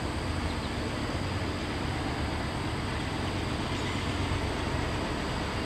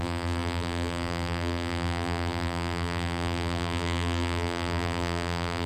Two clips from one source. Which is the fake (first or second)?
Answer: second